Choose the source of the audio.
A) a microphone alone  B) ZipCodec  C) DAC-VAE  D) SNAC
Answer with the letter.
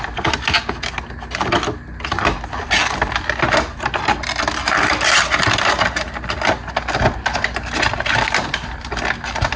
A